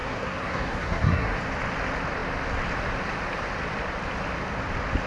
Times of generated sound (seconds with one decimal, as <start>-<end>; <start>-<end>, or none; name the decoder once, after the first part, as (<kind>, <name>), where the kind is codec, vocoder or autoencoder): 0.0-1.4 (codec, SNAC)